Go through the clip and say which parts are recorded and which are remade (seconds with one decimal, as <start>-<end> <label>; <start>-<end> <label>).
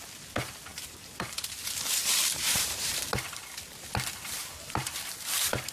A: 0.0-0.7 recorded; 0.7-1.4 remade; 1.4-2.0 recorded; 2.0-3.0 remade; 3.0-4.4 recorded; 4.4-4.9 remade; 4.9-5.7 recorded